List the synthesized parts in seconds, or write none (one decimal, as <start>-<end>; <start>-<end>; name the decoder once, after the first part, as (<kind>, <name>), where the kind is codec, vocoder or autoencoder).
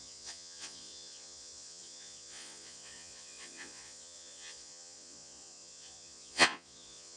0.0-7.2 (vocoder, Vocos)